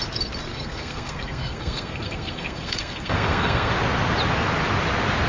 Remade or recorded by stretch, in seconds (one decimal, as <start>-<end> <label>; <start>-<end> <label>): 0.0-0.5 recorded; 0.5-3.7 remade; 3.7-5.3 recorded